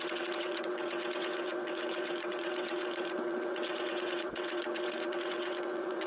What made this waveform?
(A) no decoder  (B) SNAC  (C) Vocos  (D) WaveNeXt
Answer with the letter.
D